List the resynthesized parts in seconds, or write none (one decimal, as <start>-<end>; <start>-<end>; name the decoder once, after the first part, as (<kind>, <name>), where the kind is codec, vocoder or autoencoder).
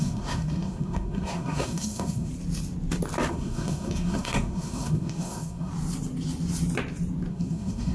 0.0-2.3 (codec, SNAC); 3.3-5.7; 7.3-7.9